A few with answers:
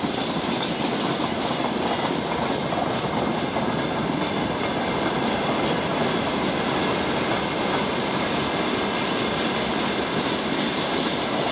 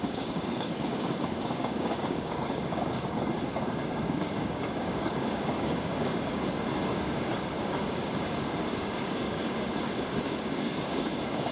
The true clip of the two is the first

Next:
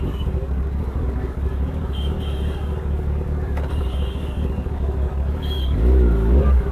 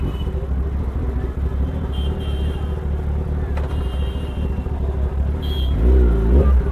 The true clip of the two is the second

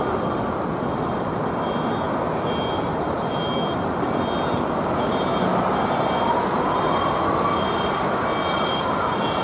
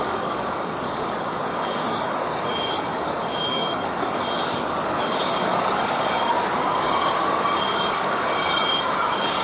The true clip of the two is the first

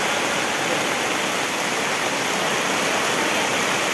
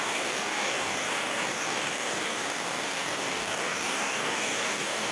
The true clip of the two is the first